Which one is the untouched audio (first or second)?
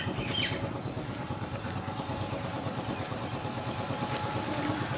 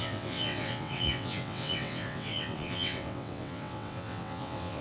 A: first